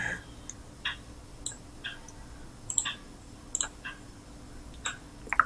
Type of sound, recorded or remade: recorded